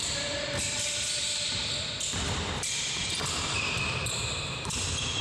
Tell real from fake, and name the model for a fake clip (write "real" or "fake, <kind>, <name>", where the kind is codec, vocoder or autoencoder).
real